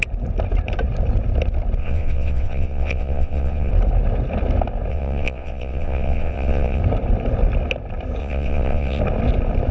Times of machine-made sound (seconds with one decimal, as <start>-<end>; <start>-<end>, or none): 1.8-3.7; 4.9-6.8; 8.2-9.0